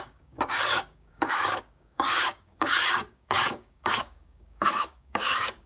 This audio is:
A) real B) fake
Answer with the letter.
B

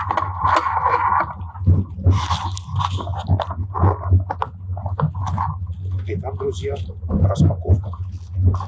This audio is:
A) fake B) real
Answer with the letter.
B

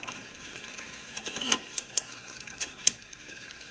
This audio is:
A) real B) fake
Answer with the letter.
B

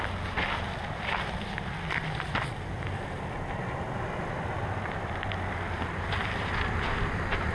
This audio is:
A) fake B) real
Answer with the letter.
B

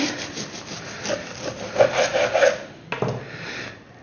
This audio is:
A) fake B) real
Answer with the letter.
B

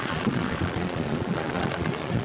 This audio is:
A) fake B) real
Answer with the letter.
A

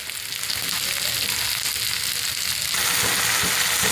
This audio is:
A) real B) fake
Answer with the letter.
A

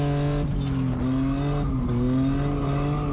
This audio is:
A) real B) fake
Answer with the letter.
A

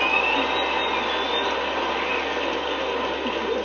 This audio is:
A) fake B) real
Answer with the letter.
B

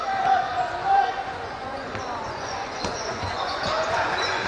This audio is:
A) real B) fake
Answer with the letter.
B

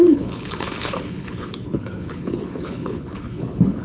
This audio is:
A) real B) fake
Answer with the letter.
B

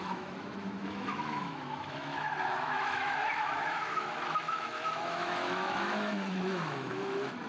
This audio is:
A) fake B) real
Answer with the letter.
A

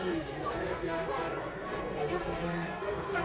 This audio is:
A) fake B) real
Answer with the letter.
A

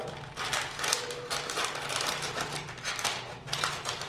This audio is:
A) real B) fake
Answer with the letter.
A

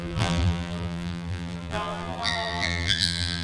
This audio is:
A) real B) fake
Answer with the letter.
B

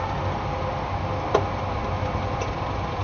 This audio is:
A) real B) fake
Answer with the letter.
A